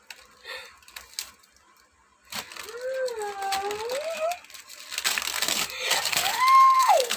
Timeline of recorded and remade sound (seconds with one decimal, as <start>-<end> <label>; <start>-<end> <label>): 0.0-6.1 recorded; 6.1-7.2 remade